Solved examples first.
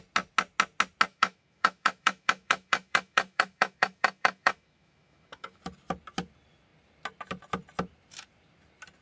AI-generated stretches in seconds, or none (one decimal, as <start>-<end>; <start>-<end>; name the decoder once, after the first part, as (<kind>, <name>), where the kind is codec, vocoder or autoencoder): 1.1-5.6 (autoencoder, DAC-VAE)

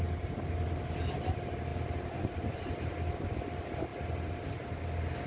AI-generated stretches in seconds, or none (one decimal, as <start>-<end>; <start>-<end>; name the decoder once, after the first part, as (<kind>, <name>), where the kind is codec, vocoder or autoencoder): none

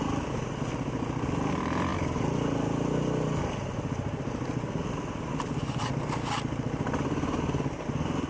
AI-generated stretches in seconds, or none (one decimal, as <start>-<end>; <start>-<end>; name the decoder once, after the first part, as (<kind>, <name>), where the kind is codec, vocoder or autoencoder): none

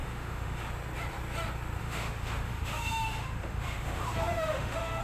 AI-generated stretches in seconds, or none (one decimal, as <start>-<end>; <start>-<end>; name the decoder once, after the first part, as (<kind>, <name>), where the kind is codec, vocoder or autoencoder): 0.0-0.6 (autoencoder, DAC-VAE); 1.8-5.0

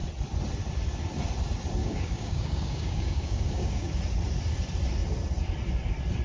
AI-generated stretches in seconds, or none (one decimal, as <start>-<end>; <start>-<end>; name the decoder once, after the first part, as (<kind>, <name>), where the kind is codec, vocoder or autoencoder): 1.8-3.9 (codec, DAC)

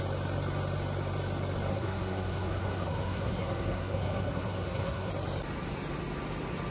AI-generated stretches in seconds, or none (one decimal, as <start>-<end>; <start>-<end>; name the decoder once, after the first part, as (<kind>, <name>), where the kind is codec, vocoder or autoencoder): 1.7-5.1 (codec, SNAC)